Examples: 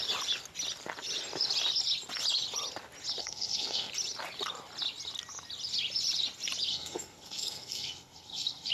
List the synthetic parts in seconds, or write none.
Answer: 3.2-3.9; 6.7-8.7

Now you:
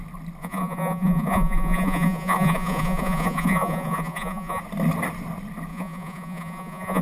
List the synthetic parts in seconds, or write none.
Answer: 0.4-4.6; 5.7-7.0

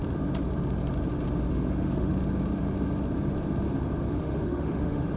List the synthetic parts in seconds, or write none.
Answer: 1.5-2.1; 4.1-5.2

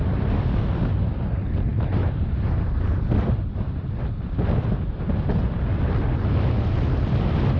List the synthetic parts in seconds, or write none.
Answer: none

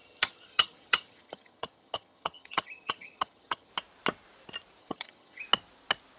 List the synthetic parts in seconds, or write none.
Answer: 0.0-3.7; 4.8-5.4

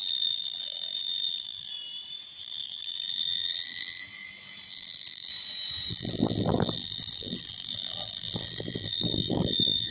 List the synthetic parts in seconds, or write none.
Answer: 0.0-1.7; 2.4-4.0; 4.7-5.3; 5.9-9.9